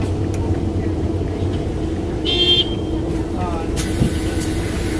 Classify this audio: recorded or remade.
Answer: recorded